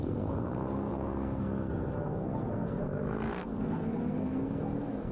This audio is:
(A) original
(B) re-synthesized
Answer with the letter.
B